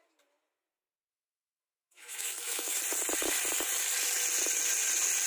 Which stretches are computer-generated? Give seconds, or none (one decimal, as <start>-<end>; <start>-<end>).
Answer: 1.1-2.8